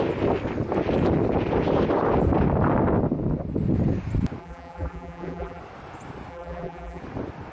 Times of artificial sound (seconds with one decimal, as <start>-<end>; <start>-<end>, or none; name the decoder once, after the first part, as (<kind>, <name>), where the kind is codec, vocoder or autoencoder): 4.4-5.6 (vocoder, BigVGAN v2); 6.3-7.0